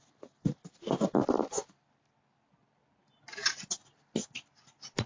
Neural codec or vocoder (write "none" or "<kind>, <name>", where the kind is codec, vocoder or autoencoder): none